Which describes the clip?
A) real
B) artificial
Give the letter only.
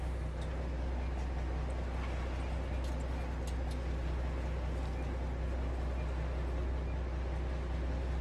A